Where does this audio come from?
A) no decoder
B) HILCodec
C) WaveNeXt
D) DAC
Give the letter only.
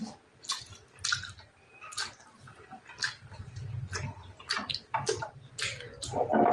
A